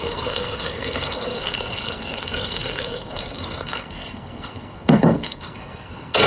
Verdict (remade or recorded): remade